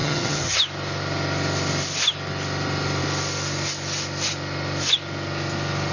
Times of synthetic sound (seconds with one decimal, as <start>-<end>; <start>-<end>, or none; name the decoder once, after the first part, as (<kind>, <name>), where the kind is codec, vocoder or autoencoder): 0.0-0.6 (vocoder, HiFi-GAN)